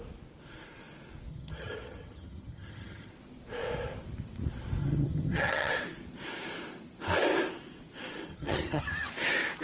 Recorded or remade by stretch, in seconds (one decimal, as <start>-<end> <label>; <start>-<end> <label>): 0.0-1.3 recorded; 1.3-3.1 remade; 3.1-4.8 recorded; 4.8-5.7 remade; 5.7-8.3 recorded; 8.3-9.1 remade; 9.1-9.6 recorded